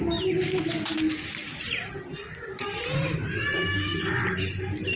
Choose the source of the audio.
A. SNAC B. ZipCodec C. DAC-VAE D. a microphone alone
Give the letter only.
D